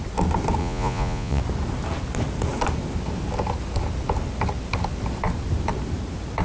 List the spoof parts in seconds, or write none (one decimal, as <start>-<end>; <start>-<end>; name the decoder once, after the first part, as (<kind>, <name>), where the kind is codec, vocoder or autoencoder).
0.6-1.4 (vocoder, Vocos)